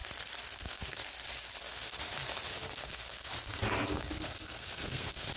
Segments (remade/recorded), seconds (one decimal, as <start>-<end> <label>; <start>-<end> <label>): 0.0-0.5 recorded; 0.5-1.0 remade; 1.0-1.6 recorded; 1.6-2.0 remade; 2.0-2.5 recorded; 2.5-3.3 remade; 3.3-3.9 recorded; 3.9-5.4 remade